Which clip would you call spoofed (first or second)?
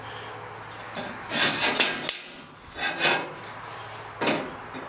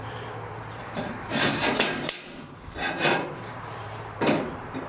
second